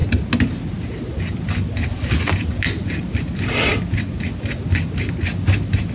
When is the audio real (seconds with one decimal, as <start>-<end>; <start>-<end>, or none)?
0.0-5.9